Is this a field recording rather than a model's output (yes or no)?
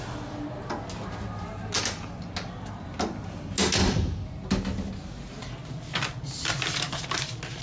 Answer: yes